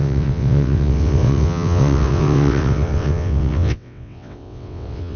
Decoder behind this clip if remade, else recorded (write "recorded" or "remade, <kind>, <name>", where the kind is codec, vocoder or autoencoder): remade, vocoder, WaveNeXt